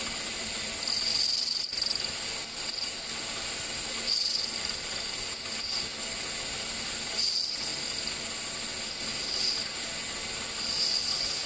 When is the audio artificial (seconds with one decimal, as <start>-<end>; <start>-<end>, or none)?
none